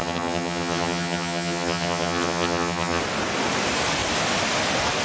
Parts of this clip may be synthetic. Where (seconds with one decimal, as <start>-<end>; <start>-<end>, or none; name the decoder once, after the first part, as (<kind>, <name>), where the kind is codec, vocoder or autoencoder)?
0.0-3.0 (vocoder, HiFi-GAN)